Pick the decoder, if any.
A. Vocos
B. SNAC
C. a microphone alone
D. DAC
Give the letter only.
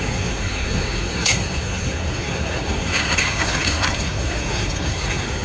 B